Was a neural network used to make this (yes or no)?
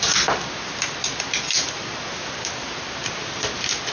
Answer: no